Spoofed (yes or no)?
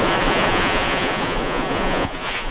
yes